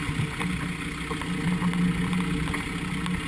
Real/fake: real